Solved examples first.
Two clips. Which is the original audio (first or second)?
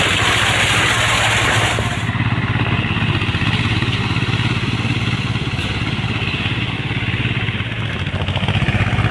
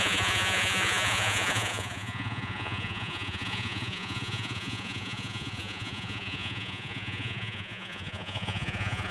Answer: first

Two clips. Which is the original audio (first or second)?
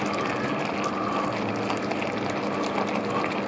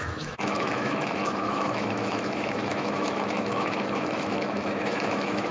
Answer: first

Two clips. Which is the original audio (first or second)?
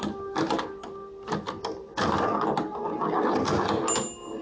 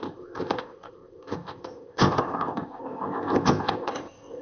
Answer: first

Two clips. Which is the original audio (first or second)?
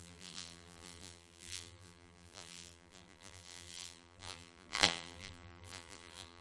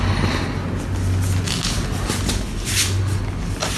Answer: second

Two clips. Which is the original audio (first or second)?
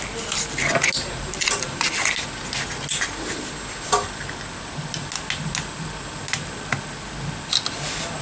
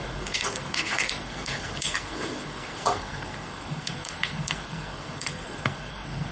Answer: first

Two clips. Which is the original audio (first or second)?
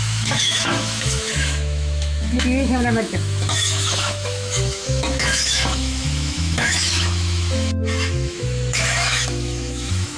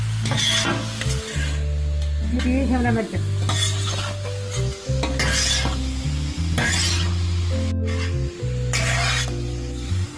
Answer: second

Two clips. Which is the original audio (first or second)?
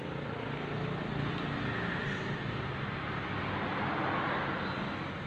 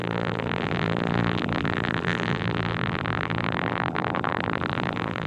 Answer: first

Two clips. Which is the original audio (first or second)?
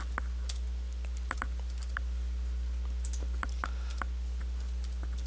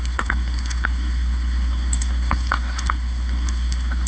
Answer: first